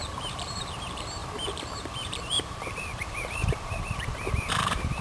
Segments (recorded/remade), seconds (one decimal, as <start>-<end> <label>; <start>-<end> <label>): 0.0-5.0 remade